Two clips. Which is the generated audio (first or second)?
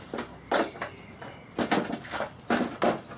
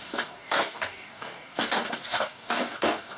second